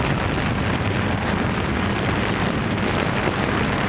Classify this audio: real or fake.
fake